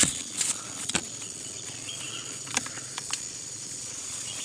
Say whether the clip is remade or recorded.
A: remade